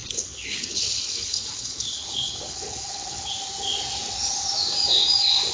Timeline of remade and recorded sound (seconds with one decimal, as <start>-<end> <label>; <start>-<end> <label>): 0.0-3.3 remade; 3.3-5.5 recorded